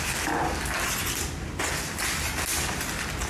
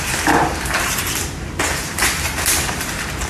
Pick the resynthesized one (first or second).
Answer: second